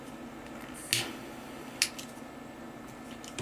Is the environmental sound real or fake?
real